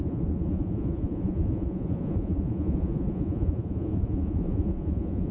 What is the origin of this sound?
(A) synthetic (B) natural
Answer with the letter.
A